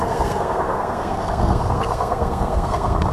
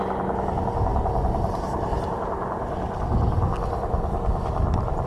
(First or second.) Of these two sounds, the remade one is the first